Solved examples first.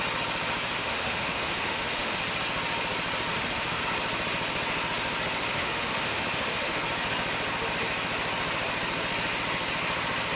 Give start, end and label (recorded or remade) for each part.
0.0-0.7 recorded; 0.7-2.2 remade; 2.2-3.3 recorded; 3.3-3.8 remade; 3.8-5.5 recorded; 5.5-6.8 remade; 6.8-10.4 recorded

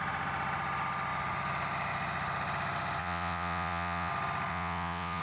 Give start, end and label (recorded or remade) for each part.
0.0-3.0 recorded; 3.0-4.1 remade; 4.1-4.5 recorded; 4.5-5.2 remade

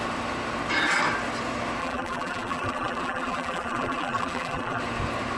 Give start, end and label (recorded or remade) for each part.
0.0-1.8 recorded; 1.8-4.8 remade; 4.8-5.4 recorded